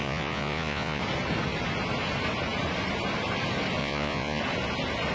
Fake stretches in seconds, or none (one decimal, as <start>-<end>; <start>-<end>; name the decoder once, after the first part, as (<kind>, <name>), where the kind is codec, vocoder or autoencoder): 0.0-1.0 (vocoder, Vocos); 3.8-4.4